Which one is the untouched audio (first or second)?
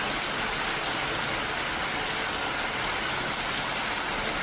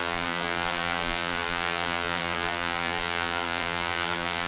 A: first